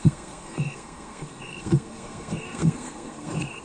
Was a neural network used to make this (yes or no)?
yes